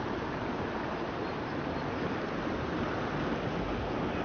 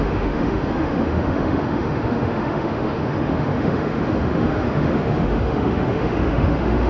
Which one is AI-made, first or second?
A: second